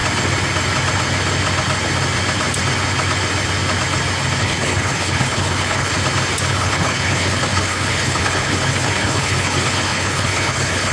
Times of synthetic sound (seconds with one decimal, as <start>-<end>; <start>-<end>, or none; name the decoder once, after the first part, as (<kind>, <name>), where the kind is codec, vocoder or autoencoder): 4.4-5.9 (codec, HILCodec); 6.5-10.9